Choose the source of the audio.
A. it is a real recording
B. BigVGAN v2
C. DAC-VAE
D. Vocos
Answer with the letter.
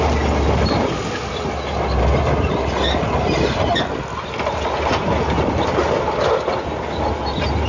A